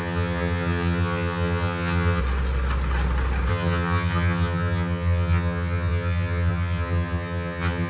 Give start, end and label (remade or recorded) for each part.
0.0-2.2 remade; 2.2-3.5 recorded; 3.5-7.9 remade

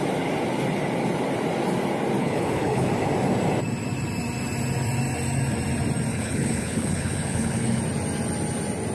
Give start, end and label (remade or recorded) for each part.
0.0-2.2 recorded; 2.2-2.9 remade; 2.9-6.1 recorded; 6.1-7.8 remade; 7.8-8.9 recorded

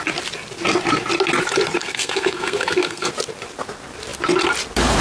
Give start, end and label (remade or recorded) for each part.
0.0-1.8 recorded; 1.8-3.1 remade; 3.1-5.0 recorded

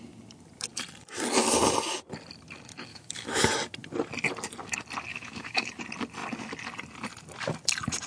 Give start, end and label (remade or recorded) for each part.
0.0-2.9 recorded; 2.9-3.5 remade; 3.5-5.1 recorded; 5.1-5.8 remade; 5.8-8.1 recorded

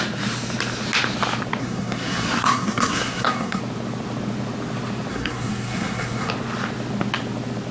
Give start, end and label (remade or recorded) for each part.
0.0-1.6 recorded; 1.6-3.6 remade; 3.6-5.1 recorded; 5.1-6.3 remade; 6.3-7.7 recorded

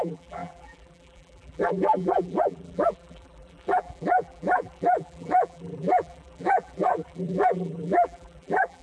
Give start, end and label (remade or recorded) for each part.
0.0-8.8 remade

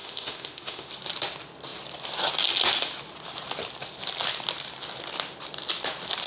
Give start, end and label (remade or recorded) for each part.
0.0-0.9 remade; 0.9-6.3 recorded